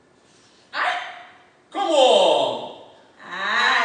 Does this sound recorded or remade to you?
recorded